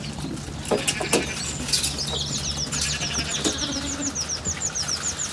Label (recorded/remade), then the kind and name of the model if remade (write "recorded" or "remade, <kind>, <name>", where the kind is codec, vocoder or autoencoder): recorded